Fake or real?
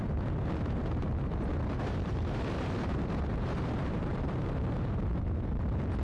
fake